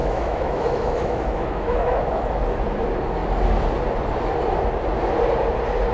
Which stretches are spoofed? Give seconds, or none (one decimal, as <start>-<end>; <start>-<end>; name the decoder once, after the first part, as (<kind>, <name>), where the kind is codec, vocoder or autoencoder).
0.0-2.4 (autoencoder, DAC-VAE)